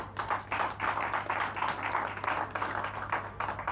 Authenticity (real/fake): real